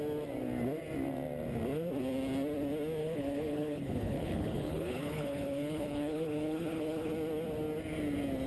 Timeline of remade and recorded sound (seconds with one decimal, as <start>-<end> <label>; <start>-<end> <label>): 0.0-3.0 recorded; 3.0-7.1 remade; 7.1-8.5 recorded